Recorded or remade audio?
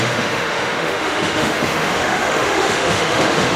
remade